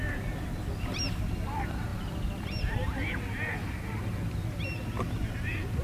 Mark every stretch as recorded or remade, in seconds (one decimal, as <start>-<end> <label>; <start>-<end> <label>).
0.0-5.8 recorded